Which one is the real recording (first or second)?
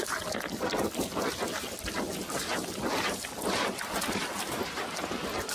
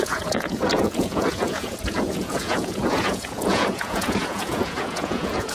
first